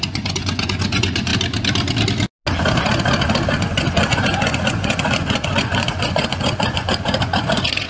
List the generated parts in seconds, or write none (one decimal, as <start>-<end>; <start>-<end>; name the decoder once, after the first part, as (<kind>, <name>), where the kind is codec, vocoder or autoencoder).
0.0-1.3 (vocoder, Vocos); 3.5-7.9